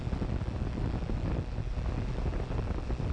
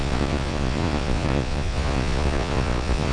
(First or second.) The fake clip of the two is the second